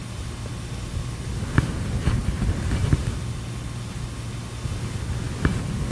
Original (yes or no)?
yes